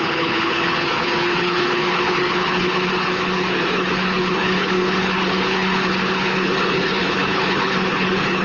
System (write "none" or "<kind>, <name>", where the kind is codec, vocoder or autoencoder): codec, HILCodec